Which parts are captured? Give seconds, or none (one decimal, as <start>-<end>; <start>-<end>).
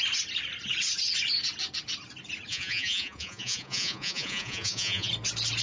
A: 0.0-2.5; 5.1-5.6